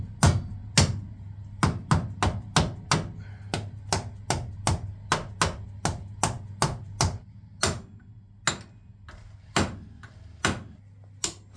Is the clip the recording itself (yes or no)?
yes